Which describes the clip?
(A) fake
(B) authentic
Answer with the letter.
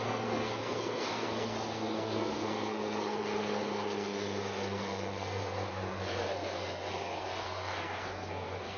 A